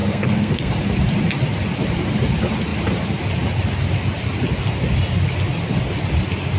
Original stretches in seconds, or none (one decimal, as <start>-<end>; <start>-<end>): 0.7-6.6